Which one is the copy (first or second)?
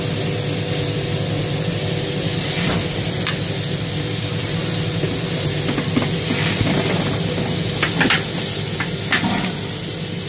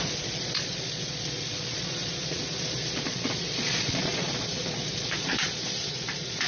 second